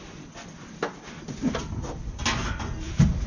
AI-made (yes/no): no